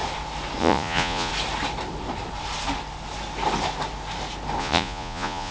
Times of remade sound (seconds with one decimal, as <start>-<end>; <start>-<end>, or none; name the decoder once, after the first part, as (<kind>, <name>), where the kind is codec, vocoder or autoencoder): 0.6-1.3 (vocoder, Vocos); 4.6-5.5